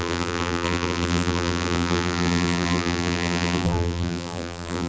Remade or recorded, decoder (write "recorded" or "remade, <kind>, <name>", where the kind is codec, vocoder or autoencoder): remade, vocoder, BigVGAN v2